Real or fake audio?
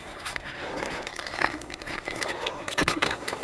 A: fake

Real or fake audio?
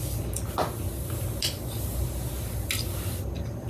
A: real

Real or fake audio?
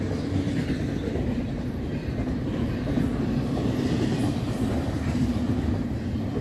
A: real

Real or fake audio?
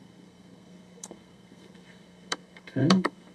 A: fake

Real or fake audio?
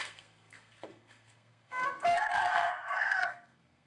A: fake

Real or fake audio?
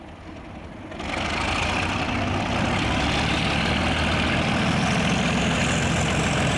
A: real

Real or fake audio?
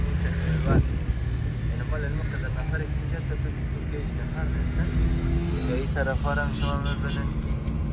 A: real